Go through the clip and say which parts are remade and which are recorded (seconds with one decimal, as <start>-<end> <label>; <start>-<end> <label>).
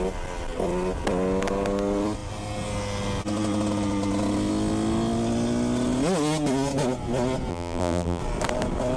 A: 0.0-7.5 recorded; 7.5-8.2 remade; 8.2-9.0 recorded